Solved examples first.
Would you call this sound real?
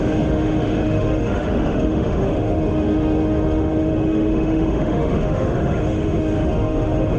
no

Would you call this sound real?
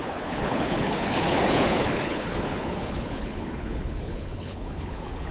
no